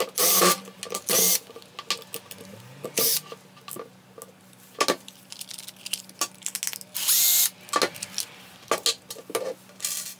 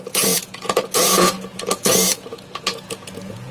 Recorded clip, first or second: first